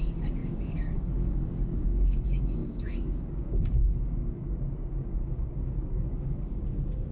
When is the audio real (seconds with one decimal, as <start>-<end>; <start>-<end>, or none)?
none